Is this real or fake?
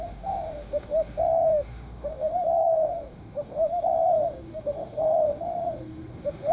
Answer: fake